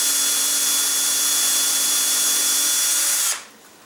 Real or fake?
real